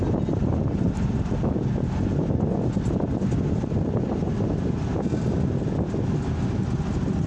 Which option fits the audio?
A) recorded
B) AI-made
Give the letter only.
A